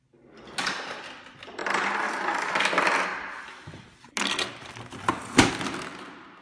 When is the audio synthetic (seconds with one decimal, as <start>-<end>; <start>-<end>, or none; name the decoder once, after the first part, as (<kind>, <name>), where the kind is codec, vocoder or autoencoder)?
1.6-2.5 (vocoder, BigVGAN v2); 5.9-6.4